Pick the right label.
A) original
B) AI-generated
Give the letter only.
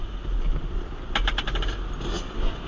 A